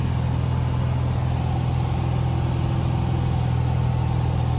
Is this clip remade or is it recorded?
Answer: recorded